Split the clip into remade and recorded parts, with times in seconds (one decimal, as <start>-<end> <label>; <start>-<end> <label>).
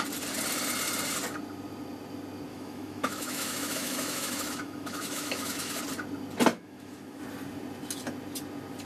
0.0-2.5 recorded; 2.5-5.8 remade; 5.8-6.5 recorded; 6.5-7.2 remade; 7.2-8.8 recorded